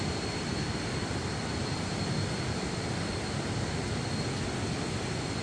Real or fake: real